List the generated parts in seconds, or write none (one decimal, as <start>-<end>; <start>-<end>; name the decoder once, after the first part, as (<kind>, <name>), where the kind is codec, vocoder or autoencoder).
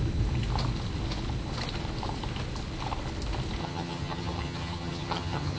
3.6-5.6 (vocoder, HiFi-GAN)